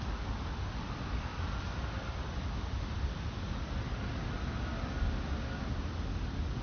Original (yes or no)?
yes